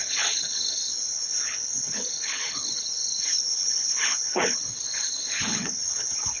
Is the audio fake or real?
fake